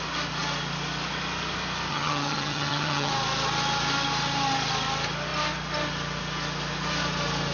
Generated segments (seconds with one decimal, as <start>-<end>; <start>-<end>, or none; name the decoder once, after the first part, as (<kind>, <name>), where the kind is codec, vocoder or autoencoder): 1.9-3.1 (vocoder, HiFi-GAN)